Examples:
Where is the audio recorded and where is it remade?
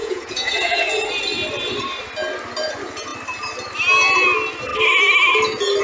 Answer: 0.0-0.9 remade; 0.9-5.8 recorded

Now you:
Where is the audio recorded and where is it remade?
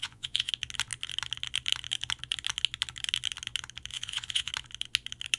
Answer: 0.0-0.5 remade; 0.5-3.9 recorded; 3.9-4.5 remade; 4.5-5.4 recorded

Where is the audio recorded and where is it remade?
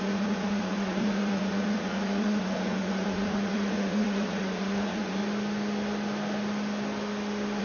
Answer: 0.0-5.2 remade; 5.2-7.6 recorded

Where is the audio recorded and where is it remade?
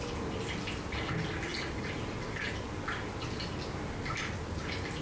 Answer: 0.0-5.0 recorded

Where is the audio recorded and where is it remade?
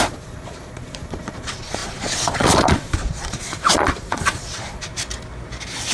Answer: 0.0-4.9 remade; 4.9-5.9 recorded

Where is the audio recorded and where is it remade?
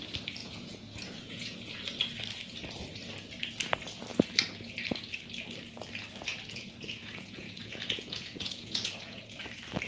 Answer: 0.0-0.4 recorded; 0.4-1.8 remade; 1.8-7.0 recorded; 7.0-9.2 remade; 9.2-9.9 recorded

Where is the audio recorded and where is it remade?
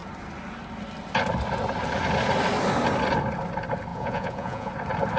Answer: 0.0-3.9 recorded; 3.9-4.7 remade; 4.7-5.2 recorded